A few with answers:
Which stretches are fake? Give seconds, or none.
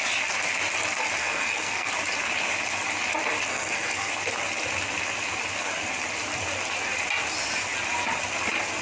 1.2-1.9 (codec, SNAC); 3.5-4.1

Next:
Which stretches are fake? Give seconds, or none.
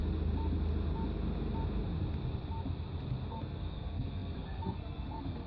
3.3-5.5 (codec, SNAC)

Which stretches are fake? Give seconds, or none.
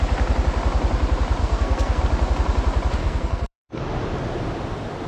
1.4-2.0 (codec, SNAC); 3.0-3.8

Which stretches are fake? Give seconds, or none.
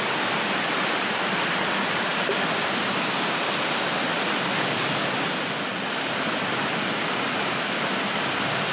none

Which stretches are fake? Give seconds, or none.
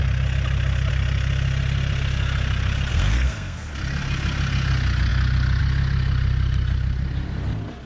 2.9-3.7 (codec, SNAC)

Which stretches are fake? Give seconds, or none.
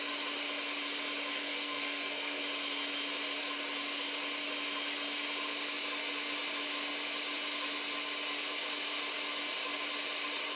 1.3-2.4 (codec, SNAC)